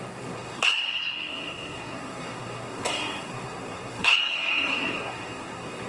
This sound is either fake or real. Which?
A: fake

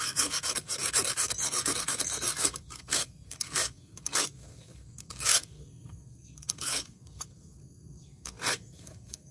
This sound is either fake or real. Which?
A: fake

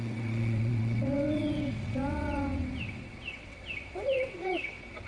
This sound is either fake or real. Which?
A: fake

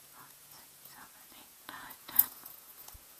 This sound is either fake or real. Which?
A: fake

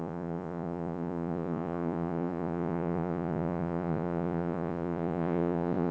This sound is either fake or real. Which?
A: fake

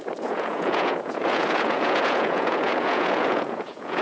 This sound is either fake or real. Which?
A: fake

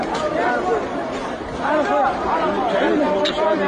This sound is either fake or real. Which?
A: real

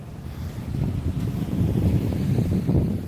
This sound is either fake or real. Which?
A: fake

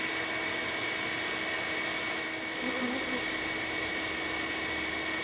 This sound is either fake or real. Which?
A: real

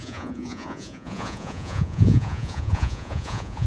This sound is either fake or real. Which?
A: fake